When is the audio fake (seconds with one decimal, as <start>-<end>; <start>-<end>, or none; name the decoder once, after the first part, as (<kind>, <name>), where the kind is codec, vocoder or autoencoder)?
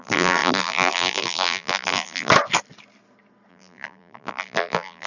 0.0-2.3 (vocoder, BigVGAN v2); 3.5-5.1